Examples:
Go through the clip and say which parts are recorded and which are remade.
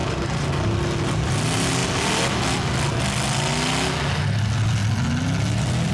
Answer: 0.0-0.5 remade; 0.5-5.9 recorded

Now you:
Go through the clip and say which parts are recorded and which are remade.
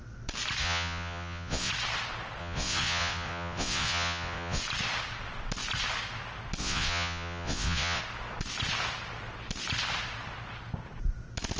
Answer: 0.0-0.6 recorded; 0.6-1.7 remade; 1.7-2.4 recorded; 2.4-4.6 remade; 4.6-6.6 recorded; 6.6-8.0 remade; 8.0-11.6 recorded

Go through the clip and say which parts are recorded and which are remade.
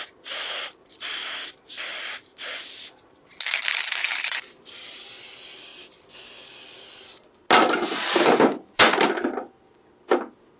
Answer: 0.0-10.6 recorded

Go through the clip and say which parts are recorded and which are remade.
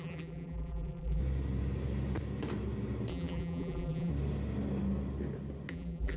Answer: 0.0-1.2 remade; 1.2-3.1 recorded; 3.1-4.1 remade; 4.1-5.7 recorded; 5.7-6.2 remade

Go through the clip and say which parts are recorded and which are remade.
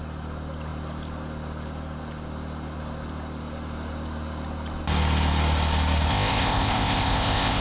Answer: 0.0-6.1 recorded; 6.1-7.6 remade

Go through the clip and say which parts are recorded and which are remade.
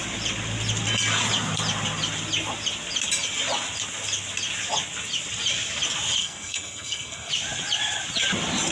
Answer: 0.0-6.2 recorded; 6.2-7.3 remade; 7.3-8.7 recorded